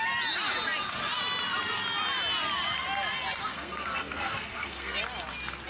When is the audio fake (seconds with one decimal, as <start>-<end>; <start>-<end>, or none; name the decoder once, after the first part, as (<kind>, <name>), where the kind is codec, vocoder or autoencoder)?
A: 3.5-5.0 (codec, SNAC)